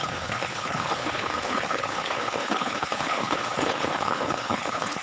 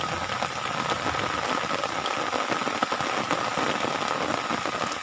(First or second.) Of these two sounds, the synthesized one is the first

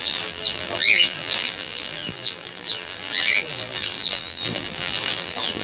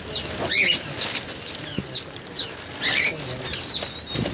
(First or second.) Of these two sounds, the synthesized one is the first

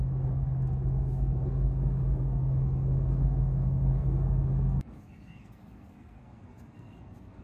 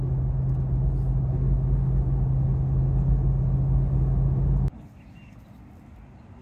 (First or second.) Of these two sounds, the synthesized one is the first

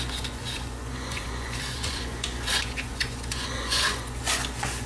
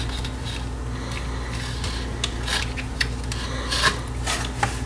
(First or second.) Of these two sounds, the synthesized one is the first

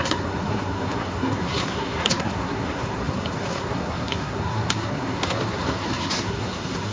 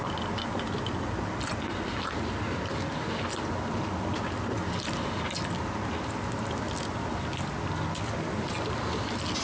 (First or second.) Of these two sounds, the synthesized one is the first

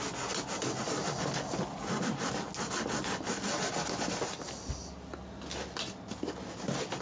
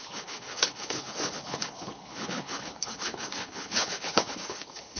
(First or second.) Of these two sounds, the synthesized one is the second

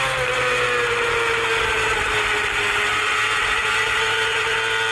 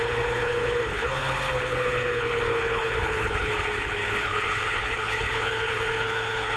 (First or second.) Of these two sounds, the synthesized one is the second